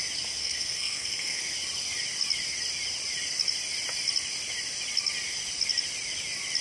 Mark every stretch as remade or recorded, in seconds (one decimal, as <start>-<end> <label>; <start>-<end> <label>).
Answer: 0.0-0.4 recorded; 0.4-1.4 remade; 1.4-6.6 recorded

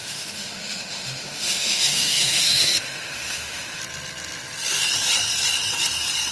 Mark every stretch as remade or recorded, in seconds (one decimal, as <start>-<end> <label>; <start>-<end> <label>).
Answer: 0.0-3.8 remade; 3.8-6.3 recorded

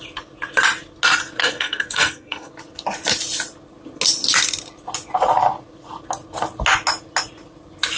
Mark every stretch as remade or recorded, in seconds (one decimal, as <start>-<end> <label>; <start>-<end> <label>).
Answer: 0.0-1.4 recorded; 1.4-2.5 remade; 2.5-8.0 recorded